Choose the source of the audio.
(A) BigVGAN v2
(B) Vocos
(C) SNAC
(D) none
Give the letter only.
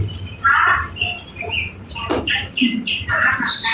A